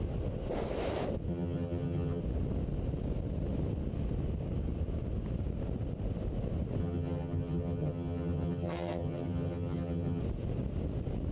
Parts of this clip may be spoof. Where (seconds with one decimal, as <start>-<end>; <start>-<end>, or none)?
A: 1.3-2.2; 6.8-10.2